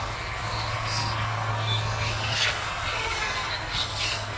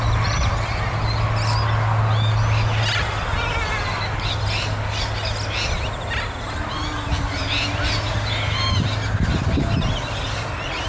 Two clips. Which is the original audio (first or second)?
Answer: second